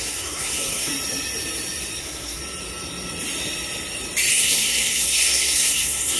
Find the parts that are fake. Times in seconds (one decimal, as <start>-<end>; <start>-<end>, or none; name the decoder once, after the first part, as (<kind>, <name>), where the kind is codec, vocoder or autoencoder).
0.0-0.9 (codec, SNAC); 2.0-2.4; 4.3-6.2